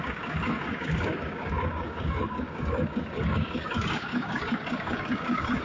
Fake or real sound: fake